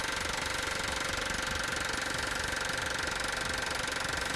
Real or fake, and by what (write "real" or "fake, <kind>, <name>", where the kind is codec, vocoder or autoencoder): real